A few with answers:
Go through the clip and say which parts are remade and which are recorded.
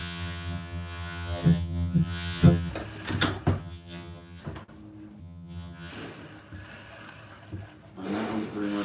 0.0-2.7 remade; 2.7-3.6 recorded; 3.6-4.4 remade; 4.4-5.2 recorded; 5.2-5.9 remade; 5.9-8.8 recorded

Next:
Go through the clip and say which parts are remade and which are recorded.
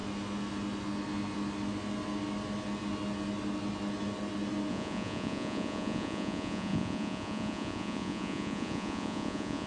0.0-4.7 recorded; 4.7-9.7 remade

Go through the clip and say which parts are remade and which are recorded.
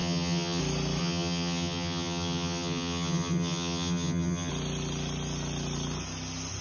0.0-0.6 remade; 0.6-1.0 recorded; 1.0-4.5 remade; 4.5-6.6 recorded